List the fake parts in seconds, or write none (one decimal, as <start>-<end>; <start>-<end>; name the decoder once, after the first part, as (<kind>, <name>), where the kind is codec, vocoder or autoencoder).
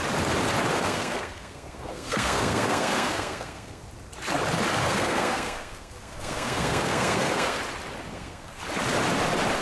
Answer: 0.7-3.8 (codec, SNAC); 4.8-7.6; 8.1-8.6